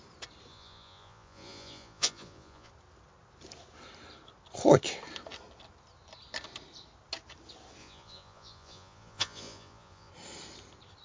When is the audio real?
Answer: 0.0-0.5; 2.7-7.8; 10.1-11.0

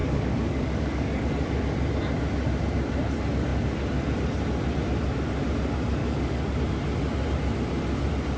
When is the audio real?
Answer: 1.3-6.0; 6.6-8.4

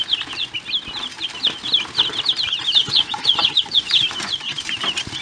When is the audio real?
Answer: 0.0-2.8; 4.6-5.2